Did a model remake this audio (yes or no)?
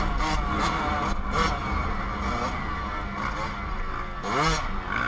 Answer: no